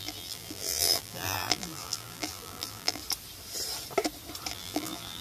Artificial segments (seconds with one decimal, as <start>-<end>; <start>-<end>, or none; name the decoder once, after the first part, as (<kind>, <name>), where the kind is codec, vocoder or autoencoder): 0.0-3.0 (vocoder, BigVGAN v2); 4.5-5.2